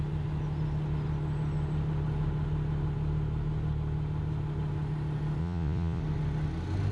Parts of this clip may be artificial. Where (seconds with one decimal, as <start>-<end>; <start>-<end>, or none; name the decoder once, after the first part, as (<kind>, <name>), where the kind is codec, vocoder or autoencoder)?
5.4-6.0 (vocoder, Vocos)

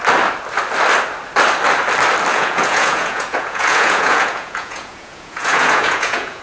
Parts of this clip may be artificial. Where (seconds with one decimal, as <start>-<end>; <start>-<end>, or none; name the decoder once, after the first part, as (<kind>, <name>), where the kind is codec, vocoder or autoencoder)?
2.3-6.4 (vocoder, Vocos)

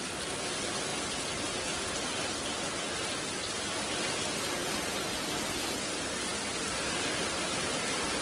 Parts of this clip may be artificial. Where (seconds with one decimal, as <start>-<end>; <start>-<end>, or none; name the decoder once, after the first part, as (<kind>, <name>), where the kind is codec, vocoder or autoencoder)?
none

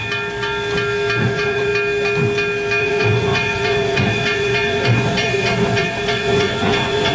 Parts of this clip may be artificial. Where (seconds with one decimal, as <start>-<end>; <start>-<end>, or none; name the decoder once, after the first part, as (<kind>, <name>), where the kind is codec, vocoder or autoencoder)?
1.2-1.7 (vocoder, Vocos); 2.8-7.1

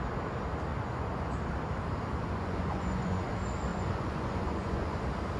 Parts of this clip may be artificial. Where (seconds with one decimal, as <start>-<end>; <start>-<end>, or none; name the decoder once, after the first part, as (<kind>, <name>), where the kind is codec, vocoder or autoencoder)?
0.7-1.3 (vocoder, Vocos); 2.2-3.3; 3.7-5.0

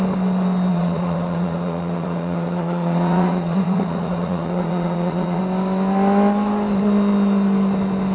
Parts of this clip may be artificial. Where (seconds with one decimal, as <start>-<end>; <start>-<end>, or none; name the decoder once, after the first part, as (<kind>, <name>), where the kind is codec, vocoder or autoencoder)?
0.7-5.4 (vocoder, Vocos)

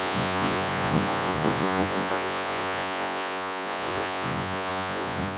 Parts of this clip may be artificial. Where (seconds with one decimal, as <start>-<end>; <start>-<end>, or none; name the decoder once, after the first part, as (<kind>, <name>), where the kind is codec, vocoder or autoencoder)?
0.0-5.4 (vocoder, Vocos)